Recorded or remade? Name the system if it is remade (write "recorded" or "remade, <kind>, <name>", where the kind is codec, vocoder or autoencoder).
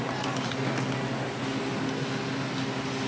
recorded